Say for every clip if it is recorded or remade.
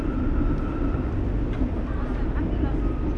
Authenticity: recorded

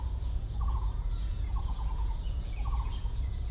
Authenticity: remade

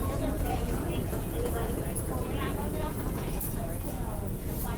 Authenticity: remade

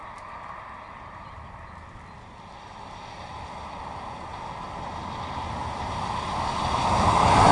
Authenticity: recorded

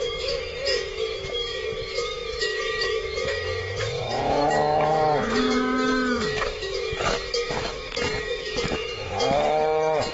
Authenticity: remade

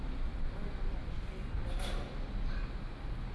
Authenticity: recorded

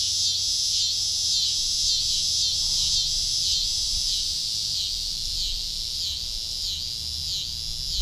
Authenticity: recorded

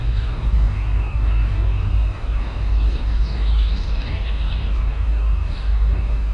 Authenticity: remade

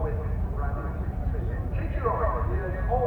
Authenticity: recorded